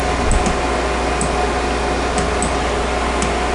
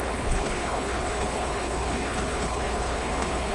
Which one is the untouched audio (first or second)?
first